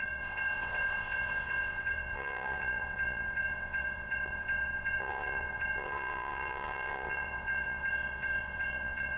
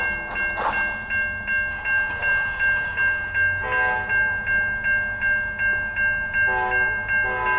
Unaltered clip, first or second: second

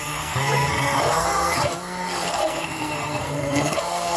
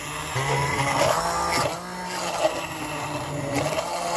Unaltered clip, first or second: second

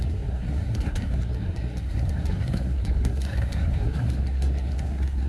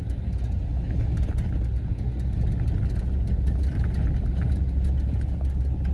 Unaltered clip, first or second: second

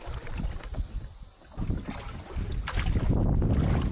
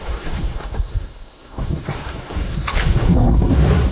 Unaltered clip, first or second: first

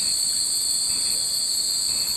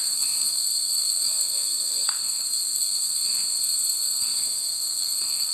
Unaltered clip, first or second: first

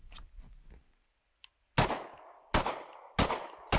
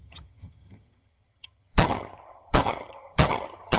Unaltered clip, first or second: first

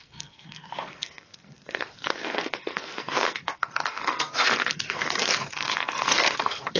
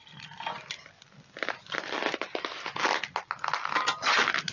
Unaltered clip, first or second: second